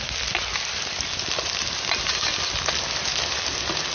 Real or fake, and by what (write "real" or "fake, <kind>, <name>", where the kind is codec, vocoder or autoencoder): real